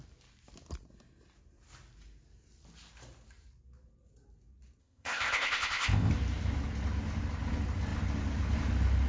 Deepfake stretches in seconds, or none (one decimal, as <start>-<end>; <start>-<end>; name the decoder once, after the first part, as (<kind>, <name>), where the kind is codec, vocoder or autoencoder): 4.8-6.1 (codec, ZipCodec)